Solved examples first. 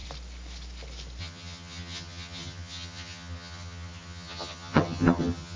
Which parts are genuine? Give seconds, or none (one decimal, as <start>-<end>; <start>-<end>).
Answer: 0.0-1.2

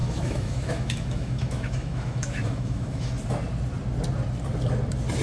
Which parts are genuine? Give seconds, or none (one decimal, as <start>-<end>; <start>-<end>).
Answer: 3.1-5.2

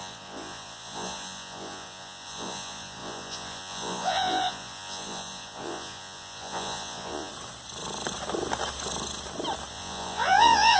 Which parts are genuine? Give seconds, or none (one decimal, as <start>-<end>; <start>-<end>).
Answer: 7.3-9.7